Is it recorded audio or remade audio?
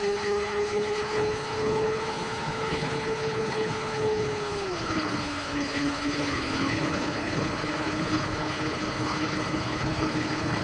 remade